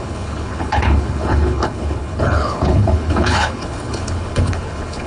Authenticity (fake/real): fake